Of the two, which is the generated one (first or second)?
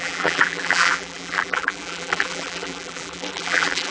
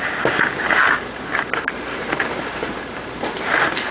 first